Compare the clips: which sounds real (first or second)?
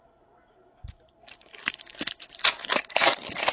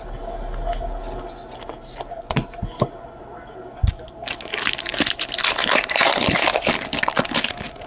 second